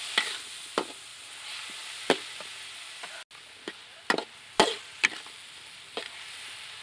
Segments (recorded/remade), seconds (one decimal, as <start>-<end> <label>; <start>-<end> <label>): 0.0-6.8 recorded